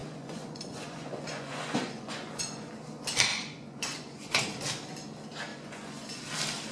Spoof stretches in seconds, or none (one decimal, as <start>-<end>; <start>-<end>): 0.0-2.7; 3.3-4.4; 5.5-6.2